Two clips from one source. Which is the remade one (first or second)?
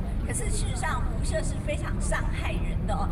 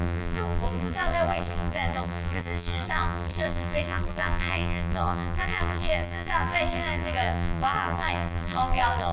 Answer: second